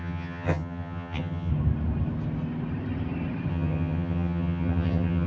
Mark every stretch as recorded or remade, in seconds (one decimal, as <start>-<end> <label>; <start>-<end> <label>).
0.0-1.5 remade; 1.5-3.5 recorded; 3.5-5.3 remade